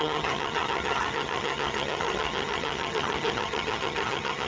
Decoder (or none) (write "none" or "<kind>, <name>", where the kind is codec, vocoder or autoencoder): vocoder, HiFi-GAN